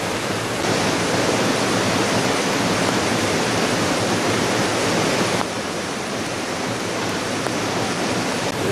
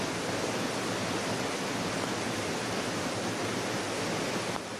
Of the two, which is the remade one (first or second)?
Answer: first